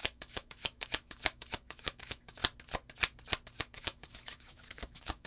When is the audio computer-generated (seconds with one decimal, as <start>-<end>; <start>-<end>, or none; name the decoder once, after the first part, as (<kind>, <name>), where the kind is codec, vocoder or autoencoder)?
0.0-2.4 (autoencoder, DAC-VAE); 3.6-5.3